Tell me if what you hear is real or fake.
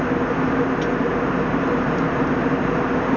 fake